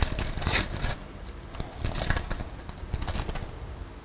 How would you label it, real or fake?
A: real